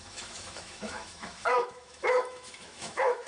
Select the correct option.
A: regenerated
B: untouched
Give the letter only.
A